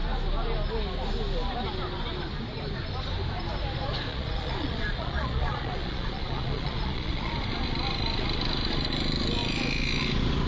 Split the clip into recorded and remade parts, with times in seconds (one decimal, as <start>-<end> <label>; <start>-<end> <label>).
0.0-4.1 recorded; 4.1-7.3 remade; 7.3-10.5 recorded